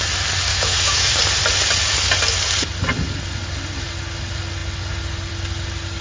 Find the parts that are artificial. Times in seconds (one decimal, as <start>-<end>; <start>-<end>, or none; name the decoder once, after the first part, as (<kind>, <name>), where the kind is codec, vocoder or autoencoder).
0.5-1.2 (autoencoder, DAC-VAE)

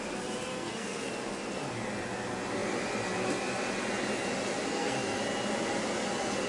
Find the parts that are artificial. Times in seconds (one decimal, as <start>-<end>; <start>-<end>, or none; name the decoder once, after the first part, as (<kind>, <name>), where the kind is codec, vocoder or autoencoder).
0.5-1.1 (codec, SNAC); 4.6-5.2

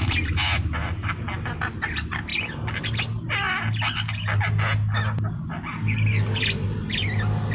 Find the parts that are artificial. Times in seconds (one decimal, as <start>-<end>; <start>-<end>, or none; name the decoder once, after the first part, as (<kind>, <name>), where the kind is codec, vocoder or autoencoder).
none